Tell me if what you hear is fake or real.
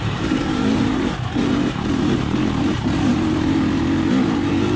fake